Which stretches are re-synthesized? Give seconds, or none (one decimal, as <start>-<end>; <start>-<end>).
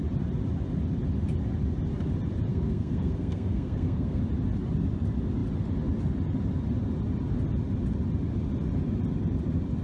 2.5-4.2